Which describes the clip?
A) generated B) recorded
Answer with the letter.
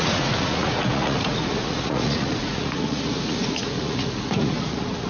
A